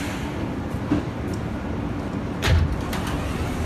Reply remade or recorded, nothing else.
recorded